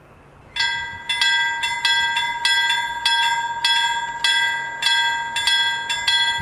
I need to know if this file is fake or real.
real